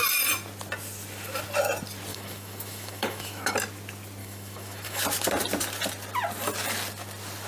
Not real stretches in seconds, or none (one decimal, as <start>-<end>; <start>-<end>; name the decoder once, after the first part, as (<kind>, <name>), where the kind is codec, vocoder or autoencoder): 2.1-3.5 (autoencoder, DAC-VAE); 4.2-5.0